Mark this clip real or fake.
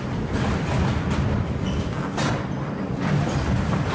real